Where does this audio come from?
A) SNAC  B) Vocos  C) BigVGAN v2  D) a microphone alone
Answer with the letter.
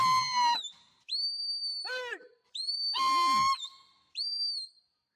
D